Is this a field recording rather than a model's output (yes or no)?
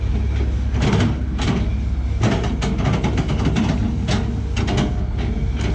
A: yes